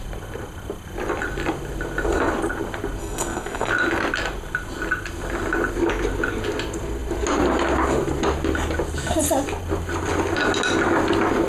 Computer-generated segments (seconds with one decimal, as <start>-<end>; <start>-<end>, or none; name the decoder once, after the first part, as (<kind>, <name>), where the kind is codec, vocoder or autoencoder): 3.0-3.7 (codec, SNAC)